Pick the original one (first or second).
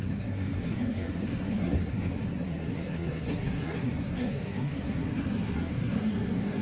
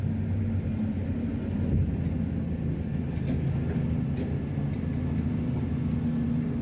second